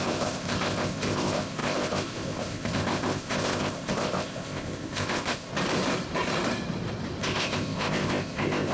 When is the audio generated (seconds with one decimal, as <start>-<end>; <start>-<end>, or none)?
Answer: 0.0-5.5; 7.2-8.7